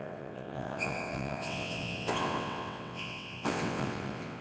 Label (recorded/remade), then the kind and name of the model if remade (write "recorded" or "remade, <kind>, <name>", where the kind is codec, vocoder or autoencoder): remade, vocoder, WaveNeXt